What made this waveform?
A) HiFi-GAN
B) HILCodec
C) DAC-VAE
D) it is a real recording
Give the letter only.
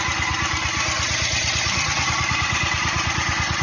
D